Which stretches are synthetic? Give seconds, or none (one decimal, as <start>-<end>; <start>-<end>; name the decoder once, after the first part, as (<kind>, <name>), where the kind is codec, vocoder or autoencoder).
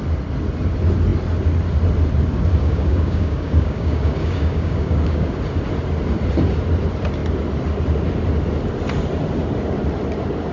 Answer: 2.6-5.3 (codec, DAC)